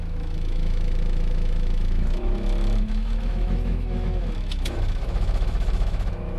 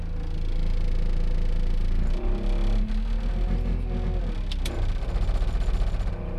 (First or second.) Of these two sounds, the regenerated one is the first